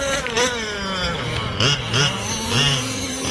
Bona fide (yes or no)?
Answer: yes